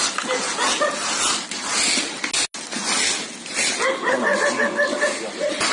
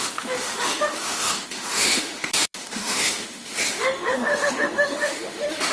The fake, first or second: second